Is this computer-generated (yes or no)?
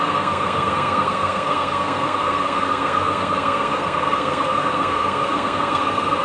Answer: yes